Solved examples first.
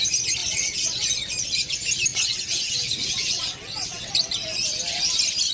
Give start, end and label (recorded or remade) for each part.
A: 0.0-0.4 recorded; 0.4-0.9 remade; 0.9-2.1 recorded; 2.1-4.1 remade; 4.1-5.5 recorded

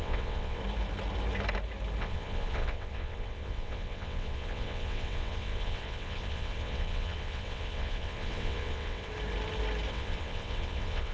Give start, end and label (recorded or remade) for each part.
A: 0.0-0.6 remade; 0.6-2.0 recorded; 2.0-9.1 remade; 9.1-9.9 recorded; 9.9-11.1 remade

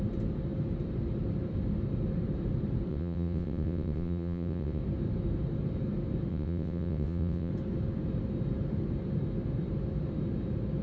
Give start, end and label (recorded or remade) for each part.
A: 0.0-2.9 recorded; 2.9-4.8 remade; 4.8-6.3 recorded; 6.3-7.5 remade; 7.5-10.8 recorded